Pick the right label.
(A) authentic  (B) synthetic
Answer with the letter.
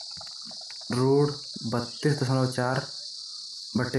A